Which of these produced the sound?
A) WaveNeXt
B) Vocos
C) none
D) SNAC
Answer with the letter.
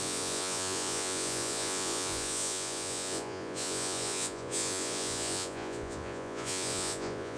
B